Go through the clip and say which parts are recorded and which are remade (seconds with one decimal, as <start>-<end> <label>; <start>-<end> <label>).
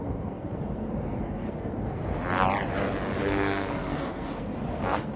0.0-2.0 remade; 2.0-3.2 recorded; 3.2-5.2 remade